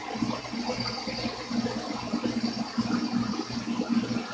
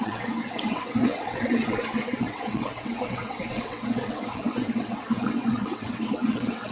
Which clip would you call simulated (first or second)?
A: second